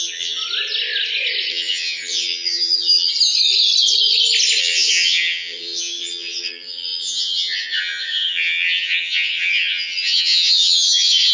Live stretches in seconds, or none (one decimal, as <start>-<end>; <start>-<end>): 0.4-1.5; 3.1-4.6